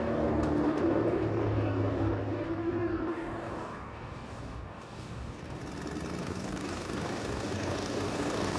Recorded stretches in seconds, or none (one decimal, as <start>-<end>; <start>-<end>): 5.6-6.2